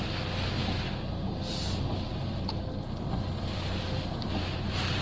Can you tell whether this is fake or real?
real